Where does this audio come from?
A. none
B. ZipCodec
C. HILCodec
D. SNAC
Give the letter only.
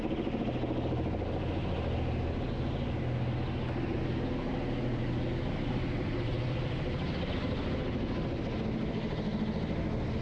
A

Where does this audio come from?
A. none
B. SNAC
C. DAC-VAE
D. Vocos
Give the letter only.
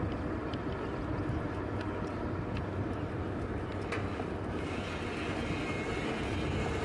A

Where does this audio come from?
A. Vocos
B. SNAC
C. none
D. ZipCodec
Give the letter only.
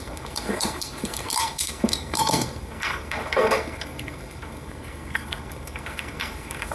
B